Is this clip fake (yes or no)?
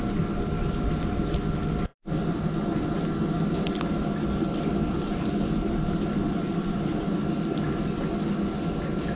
no